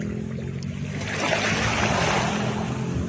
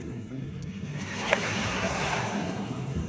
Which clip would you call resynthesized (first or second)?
second